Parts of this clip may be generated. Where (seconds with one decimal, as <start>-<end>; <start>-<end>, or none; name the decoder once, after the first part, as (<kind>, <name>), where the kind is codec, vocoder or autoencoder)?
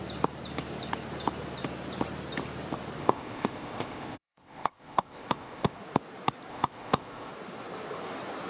3.0-5.8 (codec, ZipCodec); 6.5-7.3